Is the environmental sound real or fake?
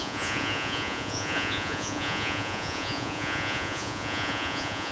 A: fake